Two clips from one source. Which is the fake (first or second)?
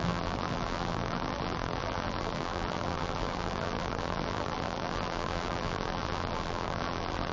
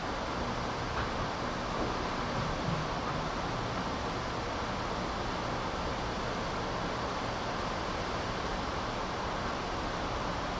first